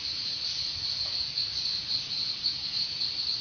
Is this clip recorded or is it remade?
recorded